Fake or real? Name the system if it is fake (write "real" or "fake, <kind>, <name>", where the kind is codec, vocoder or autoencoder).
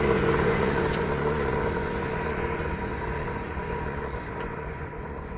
fake, vocoder, Vocos